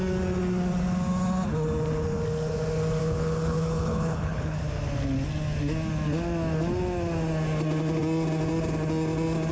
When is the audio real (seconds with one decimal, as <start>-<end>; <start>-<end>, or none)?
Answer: 0.0-3.0; 4.6-9.5